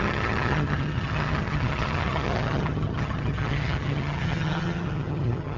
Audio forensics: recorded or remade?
remade